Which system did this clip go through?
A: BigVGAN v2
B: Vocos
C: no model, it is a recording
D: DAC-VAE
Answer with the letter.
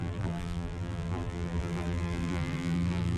A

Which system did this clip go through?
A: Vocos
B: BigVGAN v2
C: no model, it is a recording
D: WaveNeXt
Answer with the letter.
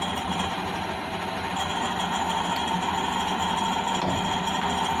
C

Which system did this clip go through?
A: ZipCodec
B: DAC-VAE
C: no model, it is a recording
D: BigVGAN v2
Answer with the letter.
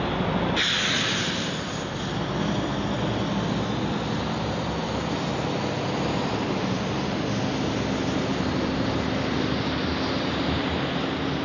C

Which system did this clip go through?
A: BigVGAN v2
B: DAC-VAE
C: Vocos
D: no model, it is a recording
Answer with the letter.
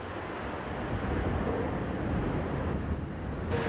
D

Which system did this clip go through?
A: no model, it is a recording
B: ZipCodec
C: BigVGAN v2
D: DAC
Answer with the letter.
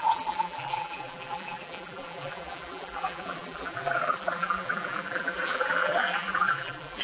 C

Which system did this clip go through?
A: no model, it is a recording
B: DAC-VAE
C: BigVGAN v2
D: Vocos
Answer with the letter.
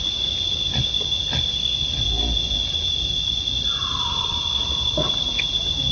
A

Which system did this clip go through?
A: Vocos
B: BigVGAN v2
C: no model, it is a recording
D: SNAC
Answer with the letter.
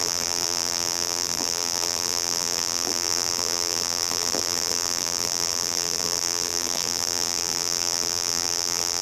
B